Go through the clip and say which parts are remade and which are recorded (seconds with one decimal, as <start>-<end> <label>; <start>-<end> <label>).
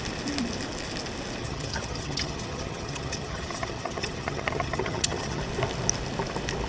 0.0-1.4 recorded; 1.4-5.4 remade; 5.4-6.7 recorded